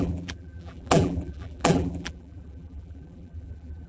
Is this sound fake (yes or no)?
yes